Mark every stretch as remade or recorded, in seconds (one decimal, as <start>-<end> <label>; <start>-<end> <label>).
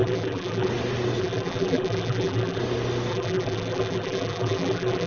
0.0-0.7 remade; 0.7-1.2 recorded; 1.2-2.6 remade; 2.6-3.1 recorded; 3.1-5.1 remade